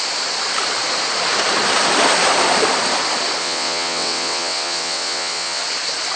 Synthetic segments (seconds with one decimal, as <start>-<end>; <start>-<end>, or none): 3.4-5.6